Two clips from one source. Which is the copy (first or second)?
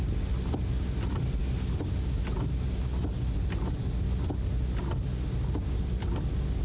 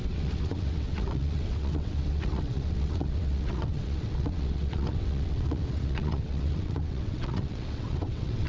second